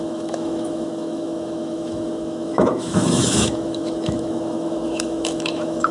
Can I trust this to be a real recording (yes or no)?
no